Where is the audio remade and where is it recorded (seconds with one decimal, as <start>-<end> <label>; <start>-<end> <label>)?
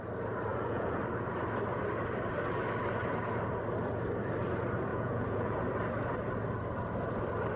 0.0-0.5 recorded; 0.5-1.0 remade; 1.0-4.9 recorded; 4.9-5.6 remade; 5.6-7.6 recorded